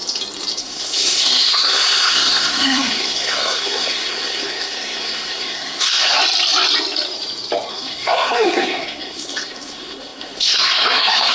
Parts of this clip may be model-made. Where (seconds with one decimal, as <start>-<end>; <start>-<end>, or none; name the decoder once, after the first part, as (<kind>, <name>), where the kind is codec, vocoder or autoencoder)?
0.6-6.2 (codec, SNAC); 7.7-11.3